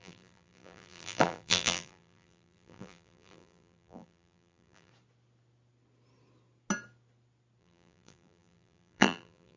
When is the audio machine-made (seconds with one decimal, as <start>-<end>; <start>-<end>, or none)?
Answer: 0.0-4.9; 7.6-9.6